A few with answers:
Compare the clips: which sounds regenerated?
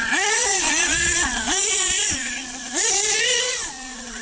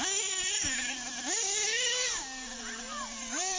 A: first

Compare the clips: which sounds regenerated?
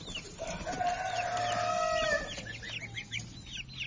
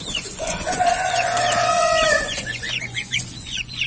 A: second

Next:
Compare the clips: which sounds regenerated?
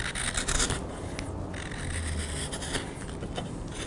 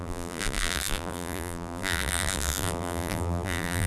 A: second